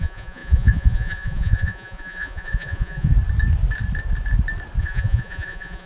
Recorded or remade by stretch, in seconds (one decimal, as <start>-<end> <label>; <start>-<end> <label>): 0.0-3.1 remade; 3.1-4.8 recorded; 4.8-5.9 remade